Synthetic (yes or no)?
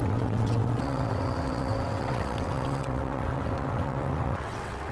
yes